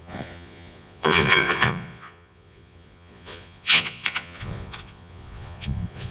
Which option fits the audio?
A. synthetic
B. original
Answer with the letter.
A